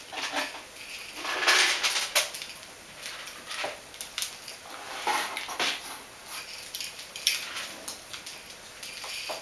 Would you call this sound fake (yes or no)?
no